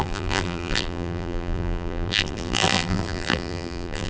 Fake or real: fake